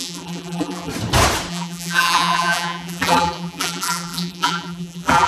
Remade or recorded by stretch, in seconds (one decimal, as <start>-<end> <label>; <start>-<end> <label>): 0.0-0.9 remade; 0.9-1.5 recorded; 1.5-5.3 remade